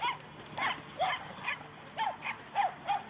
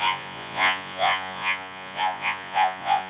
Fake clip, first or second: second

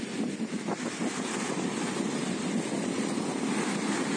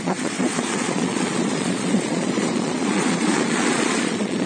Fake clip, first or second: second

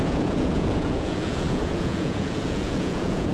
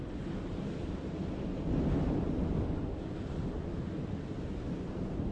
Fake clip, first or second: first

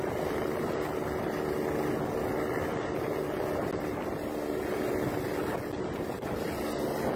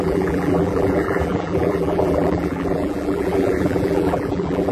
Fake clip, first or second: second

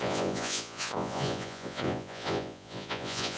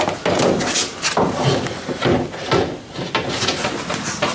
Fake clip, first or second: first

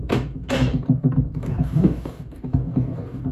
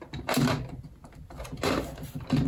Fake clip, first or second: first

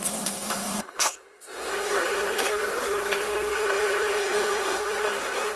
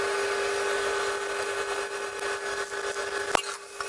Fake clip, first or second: first